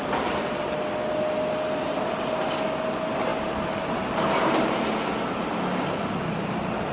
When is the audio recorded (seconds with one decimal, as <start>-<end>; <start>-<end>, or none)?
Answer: 0.0-6.9